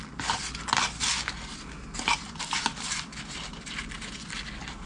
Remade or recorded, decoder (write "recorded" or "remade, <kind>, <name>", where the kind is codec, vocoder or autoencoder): recorded